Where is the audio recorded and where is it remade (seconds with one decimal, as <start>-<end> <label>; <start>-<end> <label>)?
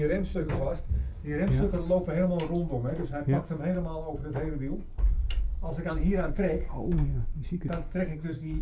0.0-1.2 remade; 1.2-5.9 recorded; 5.9-8.6 remade